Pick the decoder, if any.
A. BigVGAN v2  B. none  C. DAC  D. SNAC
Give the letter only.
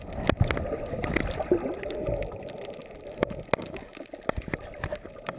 B